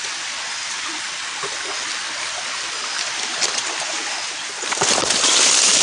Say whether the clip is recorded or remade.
recorded